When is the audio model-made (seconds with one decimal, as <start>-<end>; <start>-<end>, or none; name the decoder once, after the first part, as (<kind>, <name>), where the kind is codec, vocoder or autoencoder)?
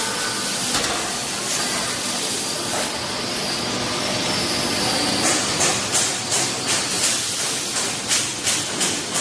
none